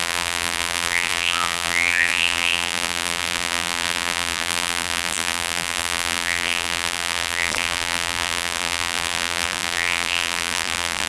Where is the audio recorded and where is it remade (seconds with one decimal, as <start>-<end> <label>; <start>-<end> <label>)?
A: 0.0-11.1 remade